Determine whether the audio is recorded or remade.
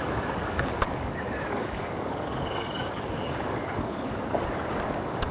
remade